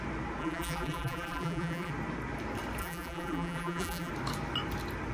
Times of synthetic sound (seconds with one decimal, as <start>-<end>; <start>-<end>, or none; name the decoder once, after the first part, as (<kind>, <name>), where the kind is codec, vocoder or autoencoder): 0.4-1.9 (vocoder, BigVGAN v2); 2.8-4.1